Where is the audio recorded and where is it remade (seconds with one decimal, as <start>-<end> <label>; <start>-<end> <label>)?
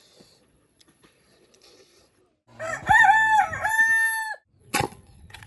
0.0-2.2 remade; 2.2-4.6 recorded; 4.6-5.5 remade